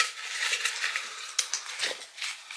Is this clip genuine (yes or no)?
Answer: yes